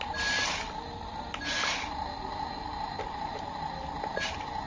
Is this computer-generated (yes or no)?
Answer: no